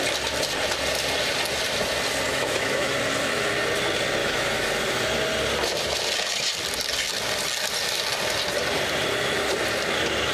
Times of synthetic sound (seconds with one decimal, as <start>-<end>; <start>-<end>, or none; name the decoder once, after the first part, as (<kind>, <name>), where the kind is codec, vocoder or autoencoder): 2.3-2.9 (autoencoder, DAC-VAE); 4.2-4.7